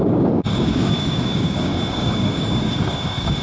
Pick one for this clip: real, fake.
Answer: fake